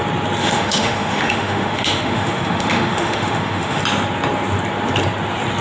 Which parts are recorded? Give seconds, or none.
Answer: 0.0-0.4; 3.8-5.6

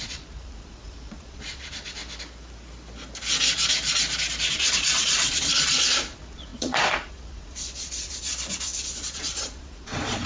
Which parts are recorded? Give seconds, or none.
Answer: 2.0-4.5

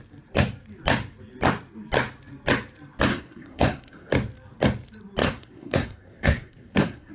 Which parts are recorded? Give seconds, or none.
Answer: 0.0-3.1; 4.1-5.2